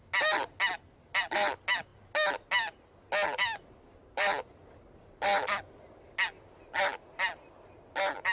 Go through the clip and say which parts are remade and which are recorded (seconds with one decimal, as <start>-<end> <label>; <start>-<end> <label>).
0.0-8.3 recorded